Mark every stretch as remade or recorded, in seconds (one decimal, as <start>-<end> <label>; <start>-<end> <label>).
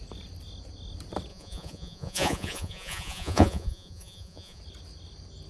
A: 0.0-1.3 recorded; 1.3-4.6 remade; 4.6-5.5 recorded